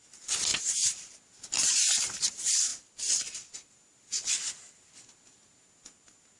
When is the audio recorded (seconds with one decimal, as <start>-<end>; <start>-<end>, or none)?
0.0-0.5; 1.1-6.4